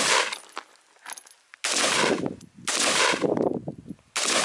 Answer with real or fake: real